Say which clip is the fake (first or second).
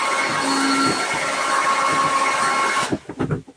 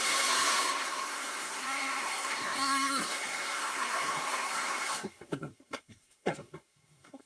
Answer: second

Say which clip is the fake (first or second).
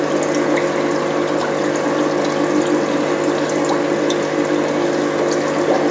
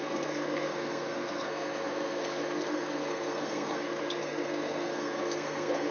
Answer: second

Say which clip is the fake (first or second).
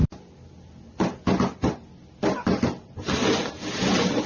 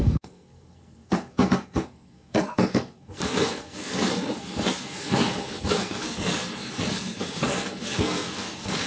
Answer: second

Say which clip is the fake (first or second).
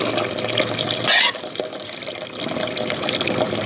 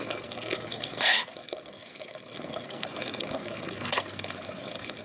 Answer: second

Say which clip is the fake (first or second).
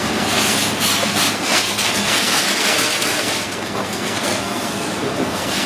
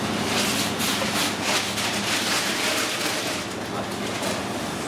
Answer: first